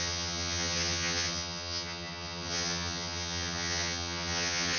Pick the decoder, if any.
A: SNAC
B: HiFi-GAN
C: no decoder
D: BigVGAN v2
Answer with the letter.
B